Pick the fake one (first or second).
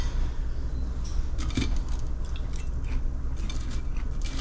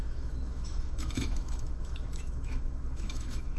second